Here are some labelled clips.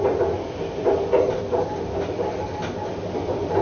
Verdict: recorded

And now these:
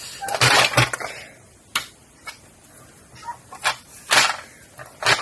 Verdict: recorded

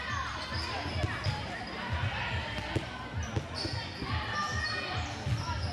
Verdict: recorded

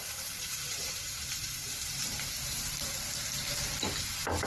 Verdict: remade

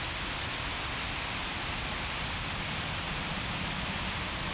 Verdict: recorded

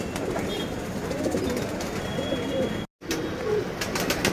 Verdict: recorded